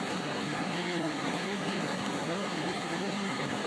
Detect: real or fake fake